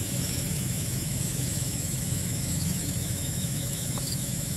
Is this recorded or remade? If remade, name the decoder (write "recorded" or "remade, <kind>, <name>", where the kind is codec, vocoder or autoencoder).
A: remade, autoencoder, DAC-VAE